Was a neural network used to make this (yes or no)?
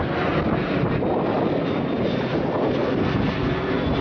no